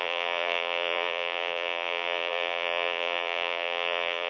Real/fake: fake